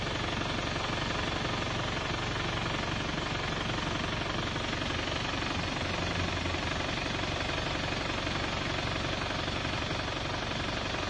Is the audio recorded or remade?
recorded